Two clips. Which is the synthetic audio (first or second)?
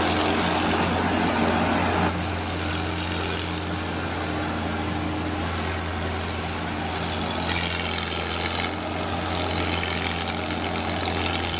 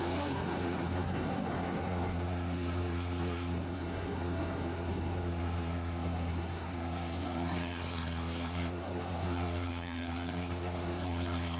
second